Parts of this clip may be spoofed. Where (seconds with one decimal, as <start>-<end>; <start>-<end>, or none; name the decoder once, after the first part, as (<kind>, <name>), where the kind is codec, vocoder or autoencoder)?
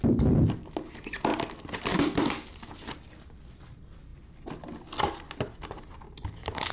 none